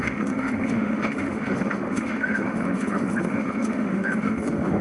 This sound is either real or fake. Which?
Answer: fake